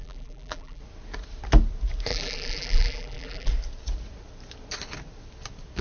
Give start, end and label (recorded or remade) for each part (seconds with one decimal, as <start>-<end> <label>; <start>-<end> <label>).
0.0-0.8 remade; 0.8-2.1 recorded; 2.1-3.5 remade; 3.5-5.8 recorded